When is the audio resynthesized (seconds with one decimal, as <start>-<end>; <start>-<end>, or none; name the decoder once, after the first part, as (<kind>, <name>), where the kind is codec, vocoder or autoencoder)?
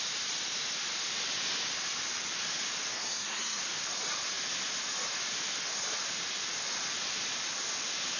2.9-3.6 (codec, SNAC)